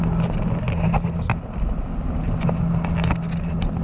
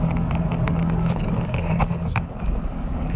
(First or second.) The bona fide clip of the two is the first